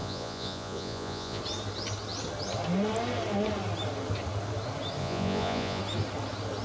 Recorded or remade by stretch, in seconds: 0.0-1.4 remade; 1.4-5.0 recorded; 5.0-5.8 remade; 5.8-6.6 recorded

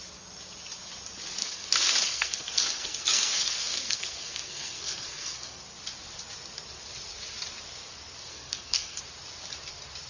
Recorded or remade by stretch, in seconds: 0.0-1.4 recorded; 1.4-5.6 remade; 5.6-8.3 recorded; 8.3-9.0 remade; 9.0-10.1 recorded

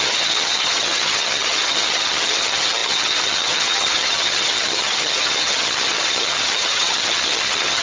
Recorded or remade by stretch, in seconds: 0.0-7.8 remade

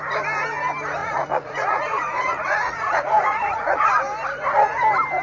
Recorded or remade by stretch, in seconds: 0.0-1.0 recorded; 1.0-3.9 remade; 3.9-5.2 recorded

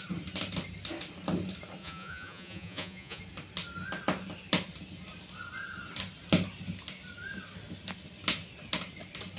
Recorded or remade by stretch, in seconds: 0.0-1.8 recorded; 1.8-3.2 remade; 3.2-9.4 recorded